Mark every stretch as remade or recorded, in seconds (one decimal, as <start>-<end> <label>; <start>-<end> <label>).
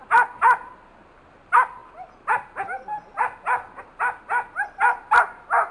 0.0-5.7 recorded